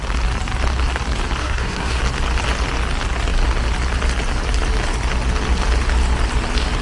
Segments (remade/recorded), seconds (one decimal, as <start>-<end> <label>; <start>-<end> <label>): 0.0-1.4 recorded; 1.4-2.0 remade; 2.0-6.8 recorded